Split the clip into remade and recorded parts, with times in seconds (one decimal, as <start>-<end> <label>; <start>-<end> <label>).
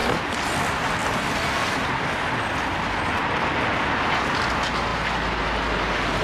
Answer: 0.0-6.2 recorded